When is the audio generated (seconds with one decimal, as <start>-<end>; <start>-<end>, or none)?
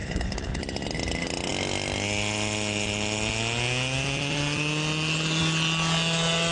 0.0-0.6